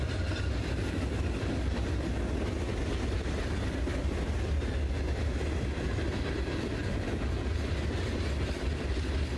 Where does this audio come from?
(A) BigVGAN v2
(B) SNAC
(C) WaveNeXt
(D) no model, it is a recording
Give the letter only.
D